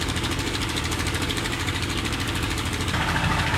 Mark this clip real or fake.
fake